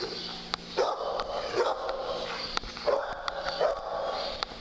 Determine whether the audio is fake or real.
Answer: real